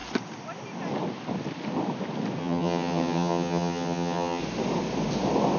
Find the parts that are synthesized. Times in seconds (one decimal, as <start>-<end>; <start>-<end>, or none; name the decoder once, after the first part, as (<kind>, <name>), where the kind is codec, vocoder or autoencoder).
2.4-4.4 (vocoder, HiFi-GAN)